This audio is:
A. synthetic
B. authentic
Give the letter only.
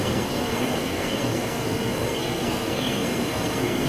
A